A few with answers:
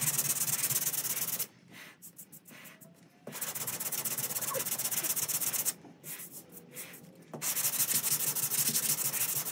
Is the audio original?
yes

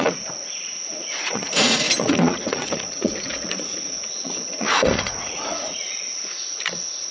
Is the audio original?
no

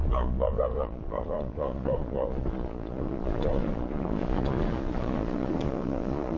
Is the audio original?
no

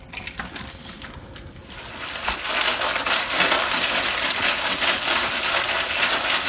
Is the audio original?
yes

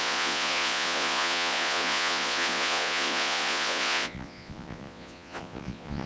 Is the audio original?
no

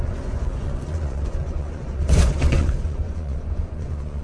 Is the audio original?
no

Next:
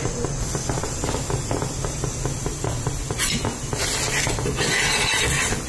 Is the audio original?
yes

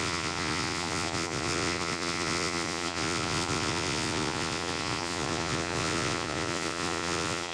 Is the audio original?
no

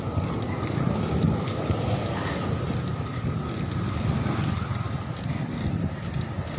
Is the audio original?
yes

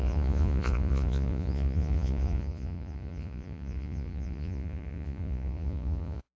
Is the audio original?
no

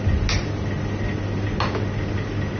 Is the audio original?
yes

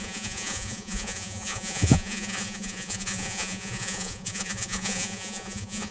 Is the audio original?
no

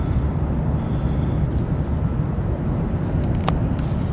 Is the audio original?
yes